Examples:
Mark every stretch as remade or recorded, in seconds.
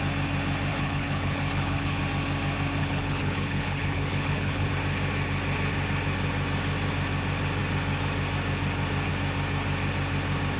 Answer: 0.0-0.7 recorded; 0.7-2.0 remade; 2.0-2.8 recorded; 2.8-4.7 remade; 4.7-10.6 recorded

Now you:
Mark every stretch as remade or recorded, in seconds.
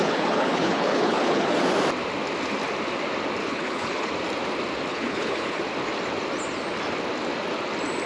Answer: 0.0-1.6 remade; 1.6-3.4 recorded; 3.4-4.1 remade; 4.1-4.9 recorded; 4.9-5.6 remade; 5.6-8.1 recorded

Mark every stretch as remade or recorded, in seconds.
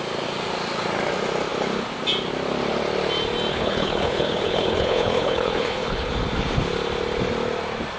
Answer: 0.0-3.5 recorded; 3.5-6.1 remade; 6.1-8.0 recorded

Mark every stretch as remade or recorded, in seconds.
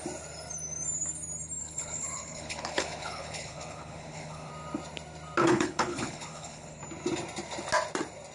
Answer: 0.0-1.6 recorded; 1.6-4.5 remade; 4.5-5.4 recorded; 5.4-6.8 remade; 6.8-8.3 recorded